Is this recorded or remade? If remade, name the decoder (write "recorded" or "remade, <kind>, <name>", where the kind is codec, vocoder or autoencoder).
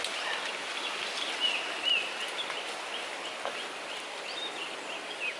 recorded